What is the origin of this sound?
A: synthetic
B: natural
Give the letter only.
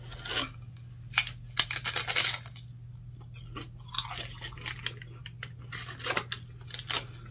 B